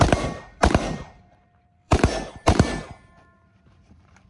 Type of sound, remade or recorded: remade